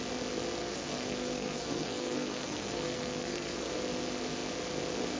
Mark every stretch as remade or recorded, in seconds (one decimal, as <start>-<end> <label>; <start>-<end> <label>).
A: 0.0-0.6 recorded; 0.6-3.7 remade; 3.7-5.2 recorded